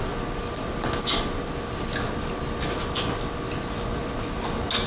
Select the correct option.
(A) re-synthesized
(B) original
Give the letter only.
B